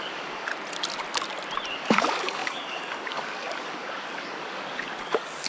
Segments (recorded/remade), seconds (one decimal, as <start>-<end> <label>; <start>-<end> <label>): 0.0-0.5 remade; 0.5-1.7 recorded; 1.7-5.5 remade